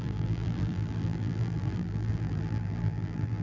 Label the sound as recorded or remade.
remade